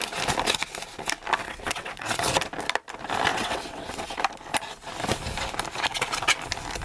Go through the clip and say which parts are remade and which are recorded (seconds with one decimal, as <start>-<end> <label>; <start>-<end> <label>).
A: 0.0-1.4 recorded; 1.4-2.2 remade; 2.2-3.3 recorded; 3.3-4.2 remade; 4.2-6.8 recorded